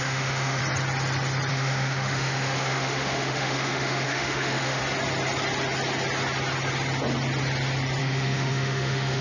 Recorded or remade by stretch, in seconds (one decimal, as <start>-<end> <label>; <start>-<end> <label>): 0.0-0.6 remade; 0.6-1.5 recorded; 1.5-4.8 remade; 4.8-8.0 recorded; 8.0-9.2 remade